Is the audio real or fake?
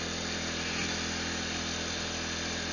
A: real